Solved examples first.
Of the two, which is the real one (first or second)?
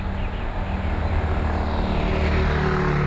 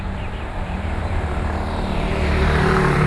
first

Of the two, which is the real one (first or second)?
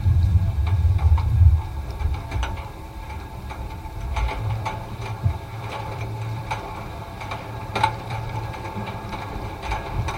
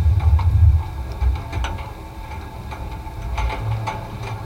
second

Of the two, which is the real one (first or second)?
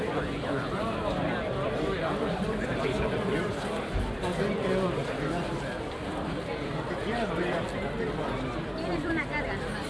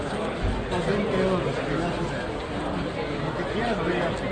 second